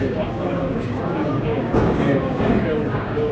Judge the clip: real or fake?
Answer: fake